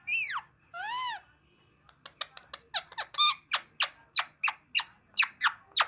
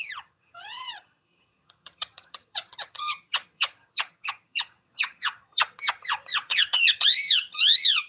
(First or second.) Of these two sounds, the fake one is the second